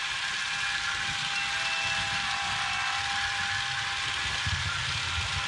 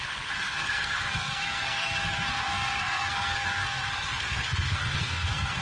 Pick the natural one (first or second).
first